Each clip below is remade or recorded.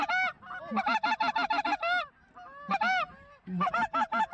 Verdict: recorded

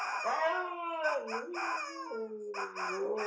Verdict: recorded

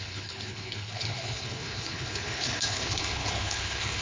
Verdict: remade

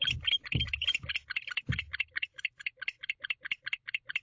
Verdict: remade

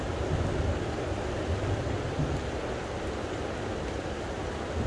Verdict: recorded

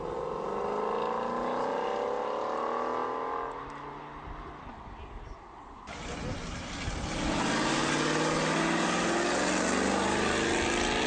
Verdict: recorded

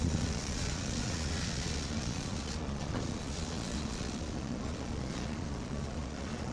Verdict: remade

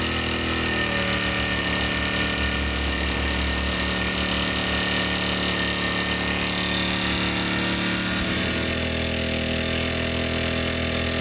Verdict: recorded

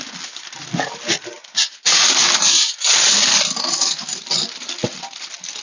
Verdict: recorded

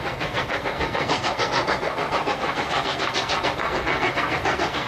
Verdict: remade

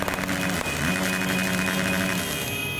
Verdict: recorded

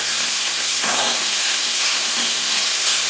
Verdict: remade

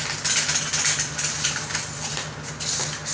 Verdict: recorded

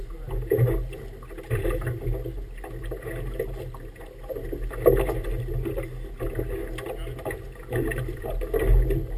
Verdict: recorded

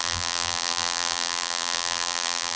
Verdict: remade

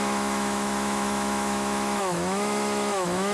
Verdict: remade